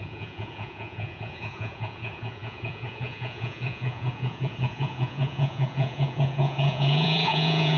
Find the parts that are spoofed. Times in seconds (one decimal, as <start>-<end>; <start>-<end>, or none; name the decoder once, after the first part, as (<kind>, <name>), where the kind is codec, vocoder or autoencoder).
0.0-7.8 (vocoder, Vocos)